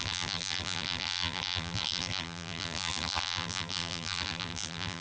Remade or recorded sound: remade